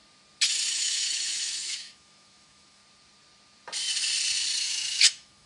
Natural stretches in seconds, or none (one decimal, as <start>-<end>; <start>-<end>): 0.0-0.7; 2.8-4.6